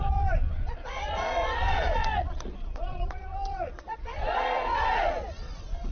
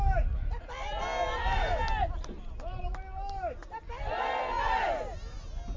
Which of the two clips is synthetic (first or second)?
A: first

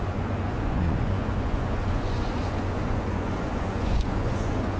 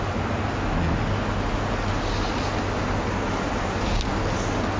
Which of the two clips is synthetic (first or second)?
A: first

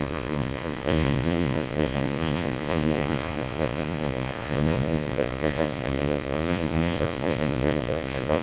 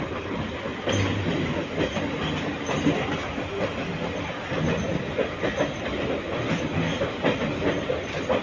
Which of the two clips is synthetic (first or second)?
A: first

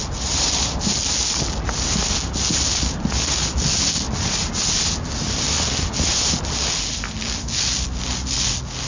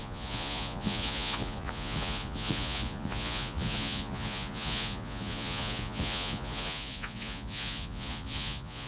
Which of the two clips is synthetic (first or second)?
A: second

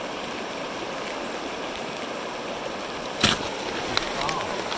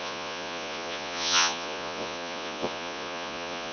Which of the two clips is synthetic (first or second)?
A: second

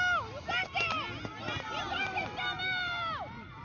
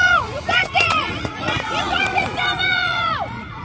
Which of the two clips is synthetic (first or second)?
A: second